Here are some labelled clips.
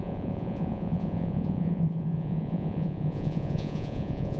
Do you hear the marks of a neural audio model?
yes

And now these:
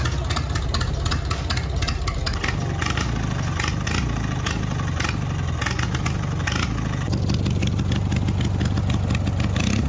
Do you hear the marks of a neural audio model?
no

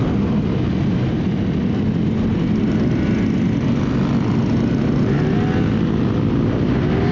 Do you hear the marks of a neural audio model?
no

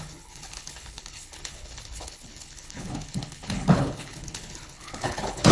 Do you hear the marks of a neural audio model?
yes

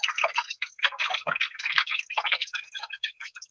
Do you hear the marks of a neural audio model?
yes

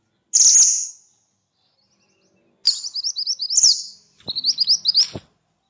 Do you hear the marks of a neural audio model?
no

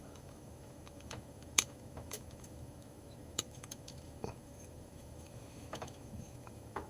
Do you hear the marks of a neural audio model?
yes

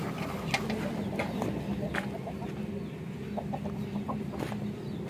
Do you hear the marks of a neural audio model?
no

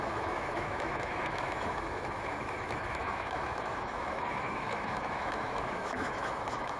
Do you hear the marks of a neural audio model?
yes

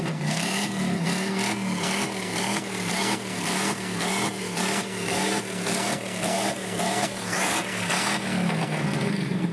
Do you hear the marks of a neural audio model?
yes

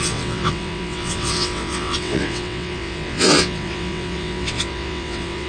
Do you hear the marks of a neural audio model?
yes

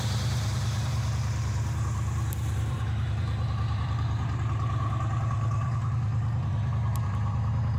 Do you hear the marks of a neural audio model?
yes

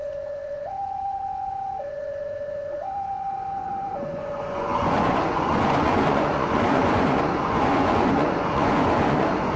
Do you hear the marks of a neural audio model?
yes